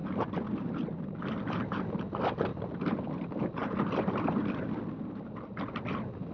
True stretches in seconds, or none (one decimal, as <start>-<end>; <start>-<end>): 1.8-2.5; 3.2-3.6; 5.0-6.3